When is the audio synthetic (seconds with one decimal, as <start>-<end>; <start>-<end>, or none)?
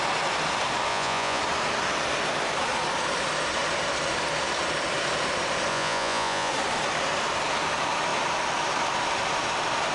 0.9-1.4; 5.7-6.5